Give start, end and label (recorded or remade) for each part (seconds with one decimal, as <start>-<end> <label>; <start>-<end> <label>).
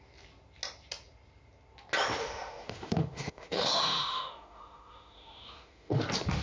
0.0-2.2 recorded; 2.2-6.0 remade; 6.0-6.4 recorded